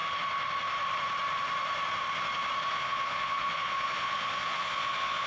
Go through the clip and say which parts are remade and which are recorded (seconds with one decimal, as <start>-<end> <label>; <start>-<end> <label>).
0.0-2.7 recorded; 2.7-5.3 remade